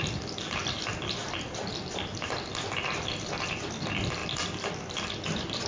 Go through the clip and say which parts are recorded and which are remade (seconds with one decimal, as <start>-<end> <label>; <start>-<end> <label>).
0.0-1.2 recorded; 1.2-2.6 remade; 2.6-5.7 recorded